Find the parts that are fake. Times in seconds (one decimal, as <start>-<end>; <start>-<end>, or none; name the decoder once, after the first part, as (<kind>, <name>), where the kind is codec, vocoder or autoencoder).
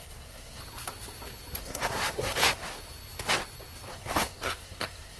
0.0-0.6 (codec, SNAC); 1.6-2.6; 3.9-5.2